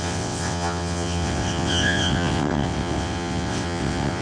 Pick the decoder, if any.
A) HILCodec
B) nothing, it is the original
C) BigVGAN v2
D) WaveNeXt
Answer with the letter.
D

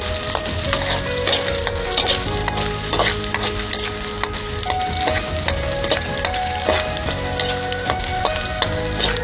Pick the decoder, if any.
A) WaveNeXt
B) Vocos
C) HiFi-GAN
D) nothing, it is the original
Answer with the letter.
D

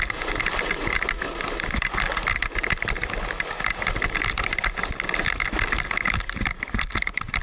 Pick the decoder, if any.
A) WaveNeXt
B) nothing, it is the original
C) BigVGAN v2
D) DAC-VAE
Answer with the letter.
B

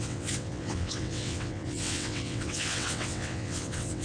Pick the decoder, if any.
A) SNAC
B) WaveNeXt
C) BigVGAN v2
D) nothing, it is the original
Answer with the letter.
B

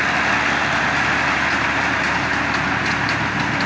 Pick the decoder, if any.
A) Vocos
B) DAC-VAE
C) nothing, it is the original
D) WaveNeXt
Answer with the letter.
C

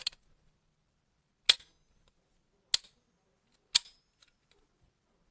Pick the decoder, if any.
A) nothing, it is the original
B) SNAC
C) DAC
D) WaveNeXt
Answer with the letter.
A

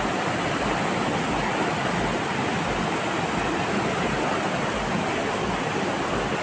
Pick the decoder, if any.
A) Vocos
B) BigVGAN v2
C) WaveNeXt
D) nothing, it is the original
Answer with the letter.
D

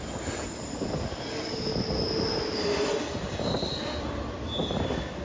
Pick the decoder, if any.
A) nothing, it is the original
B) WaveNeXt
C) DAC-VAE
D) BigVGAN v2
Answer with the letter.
A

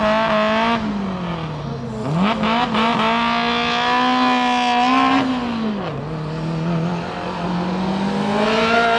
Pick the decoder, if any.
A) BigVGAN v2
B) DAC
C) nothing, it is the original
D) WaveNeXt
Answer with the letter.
C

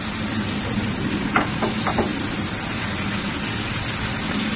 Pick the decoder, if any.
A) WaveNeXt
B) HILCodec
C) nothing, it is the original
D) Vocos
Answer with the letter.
C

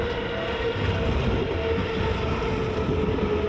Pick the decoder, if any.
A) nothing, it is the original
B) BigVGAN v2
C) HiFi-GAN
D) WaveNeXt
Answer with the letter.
A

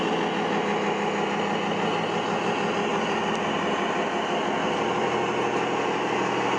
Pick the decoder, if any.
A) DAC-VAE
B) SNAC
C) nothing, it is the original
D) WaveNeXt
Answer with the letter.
C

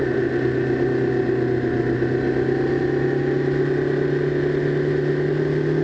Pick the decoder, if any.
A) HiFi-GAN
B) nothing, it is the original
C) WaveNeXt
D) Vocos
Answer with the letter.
B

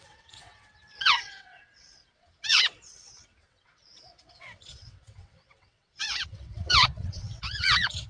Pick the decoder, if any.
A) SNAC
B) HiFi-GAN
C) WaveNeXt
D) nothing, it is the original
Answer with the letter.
C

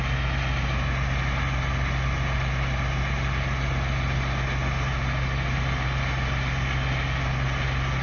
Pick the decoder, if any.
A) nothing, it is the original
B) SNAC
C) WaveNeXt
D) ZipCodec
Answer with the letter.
A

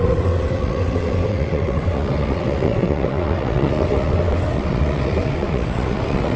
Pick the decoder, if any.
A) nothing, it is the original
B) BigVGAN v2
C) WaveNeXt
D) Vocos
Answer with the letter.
C